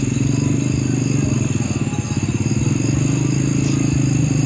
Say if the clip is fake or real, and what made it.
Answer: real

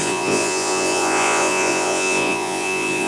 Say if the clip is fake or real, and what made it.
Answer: fake, vocoder, Vocos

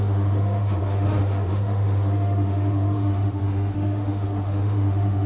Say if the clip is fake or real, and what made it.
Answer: fake, autoencoder, DAC-VAE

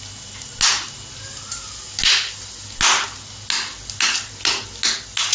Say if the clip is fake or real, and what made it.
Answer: real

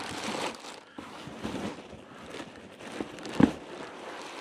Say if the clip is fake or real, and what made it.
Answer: real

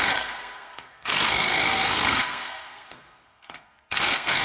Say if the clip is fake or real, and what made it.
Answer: fake, codec, SNAC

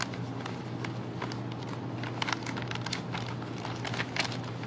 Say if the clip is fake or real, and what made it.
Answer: real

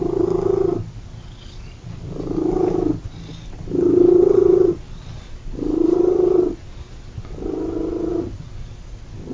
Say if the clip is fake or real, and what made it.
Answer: real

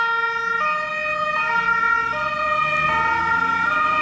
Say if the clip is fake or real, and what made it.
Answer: real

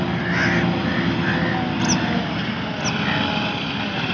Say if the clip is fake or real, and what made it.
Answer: real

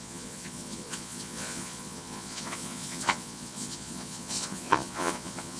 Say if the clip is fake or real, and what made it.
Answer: fake, vocoder, Vocos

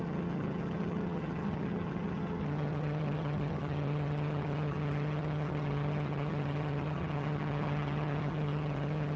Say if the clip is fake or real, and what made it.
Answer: fake, vocoder, HiFi-GAN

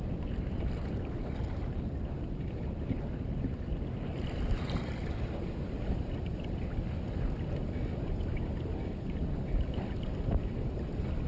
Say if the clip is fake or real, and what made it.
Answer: real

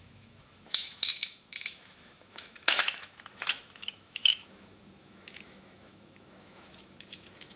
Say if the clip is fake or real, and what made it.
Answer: fake, autoencoder, DAC-VAE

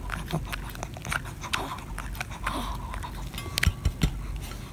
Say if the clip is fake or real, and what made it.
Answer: real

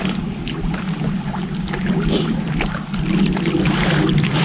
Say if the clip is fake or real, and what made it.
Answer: real